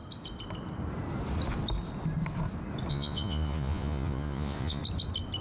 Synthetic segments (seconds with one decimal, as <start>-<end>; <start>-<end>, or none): 2.9-4.8